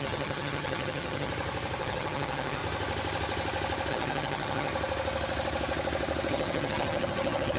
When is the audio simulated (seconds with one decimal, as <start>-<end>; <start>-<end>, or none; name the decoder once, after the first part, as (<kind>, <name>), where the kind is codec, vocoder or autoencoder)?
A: 0.0-1.3 (vocoder, HiFi-GAN); 1.8-2.6; 3.9-4.7; 6.3-7.6